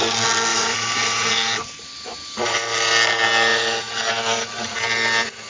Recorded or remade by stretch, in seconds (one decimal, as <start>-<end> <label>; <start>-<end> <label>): 0.0-0.5 recorded; 0.5-1.6 remade; 1.6-5.5 recorded